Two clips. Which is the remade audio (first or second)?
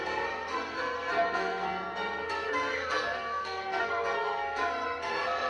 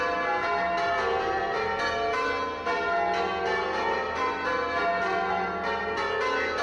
first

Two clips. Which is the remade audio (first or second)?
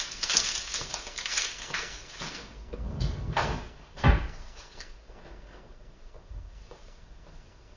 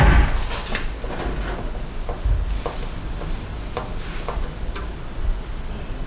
first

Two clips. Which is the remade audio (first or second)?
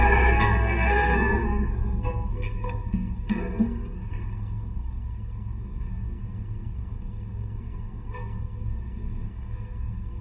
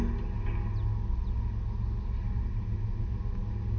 first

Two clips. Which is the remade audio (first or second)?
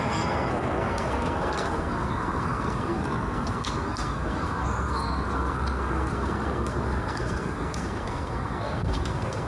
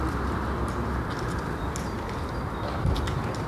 first